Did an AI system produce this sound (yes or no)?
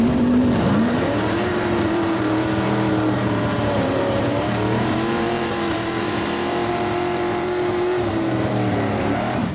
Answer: yes